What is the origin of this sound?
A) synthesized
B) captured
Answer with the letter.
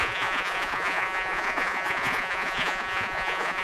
A